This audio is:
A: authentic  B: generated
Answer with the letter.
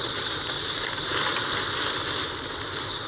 A